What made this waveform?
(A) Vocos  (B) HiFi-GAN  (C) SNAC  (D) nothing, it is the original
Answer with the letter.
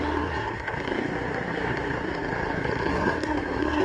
C